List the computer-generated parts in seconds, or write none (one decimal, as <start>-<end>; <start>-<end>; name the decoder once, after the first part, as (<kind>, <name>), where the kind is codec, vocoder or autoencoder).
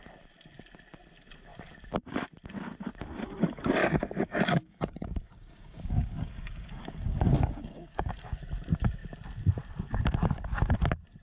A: 3.8-8.4 (codec, DAC)